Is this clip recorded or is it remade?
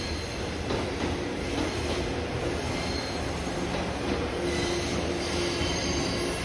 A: recorded